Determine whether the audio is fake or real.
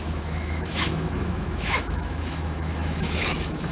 fake